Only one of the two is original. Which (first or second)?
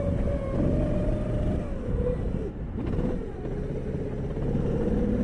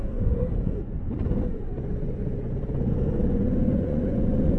first